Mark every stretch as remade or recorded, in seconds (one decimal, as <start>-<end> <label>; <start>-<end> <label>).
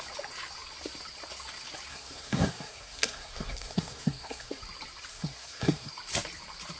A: 0.0-1.9 recorded; 1.9-4.6 remade; 4.6-5.1 recorded; 5.1-5.9 remade; 5.9-6.8 recorded